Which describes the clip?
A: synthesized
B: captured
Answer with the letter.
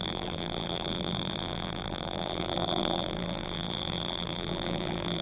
A